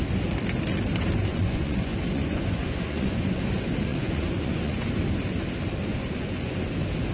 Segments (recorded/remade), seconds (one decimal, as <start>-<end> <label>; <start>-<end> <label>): 0.0-1.3 recorded; 1.3-3.4 remade; 3.4-3.9 recorded; 3.9-4.9 remade; 4.9-5.9 recorded; 5.9-6.5 remade; 6.5-7.1 recorded